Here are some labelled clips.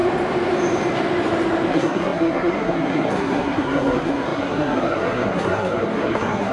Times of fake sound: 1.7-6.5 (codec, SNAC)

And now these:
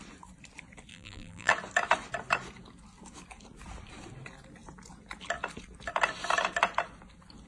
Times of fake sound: 0.9-1.5 (vocoder, BigVGAN v2)